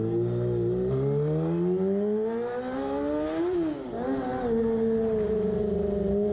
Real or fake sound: real